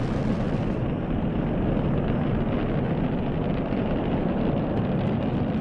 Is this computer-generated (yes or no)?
no